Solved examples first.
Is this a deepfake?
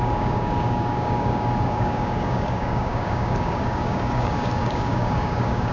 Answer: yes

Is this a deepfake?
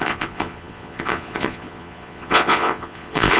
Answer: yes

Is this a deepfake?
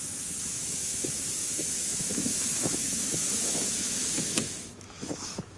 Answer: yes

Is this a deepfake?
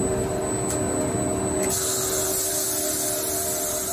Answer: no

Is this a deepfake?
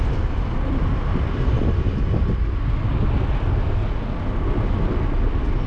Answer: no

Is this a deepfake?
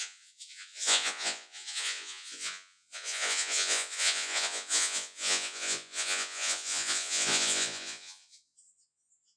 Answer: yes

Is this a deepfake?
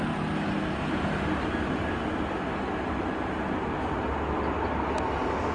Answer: no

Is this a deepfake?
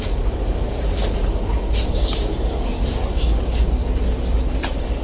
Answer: yes